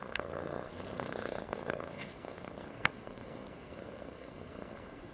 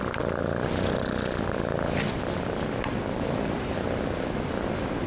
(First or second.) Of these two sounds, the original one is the second